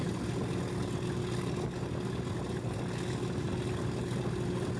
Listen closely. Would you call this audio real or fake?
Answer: real